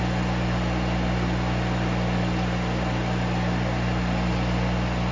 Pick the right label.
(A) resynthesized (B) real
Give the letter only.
B